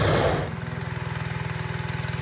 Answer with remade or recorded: recorded